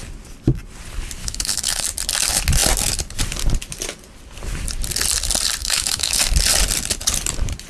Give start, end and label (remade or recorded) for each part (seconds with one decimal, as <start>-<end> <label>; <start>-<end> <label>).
0.0-1.2 recorded; 1.2-1.8 remade; 1.8-5.6 recorded; 5.6-6.2 remade; 6.2-7.7 recorded